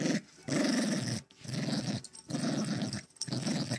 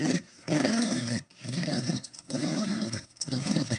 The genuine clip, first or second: first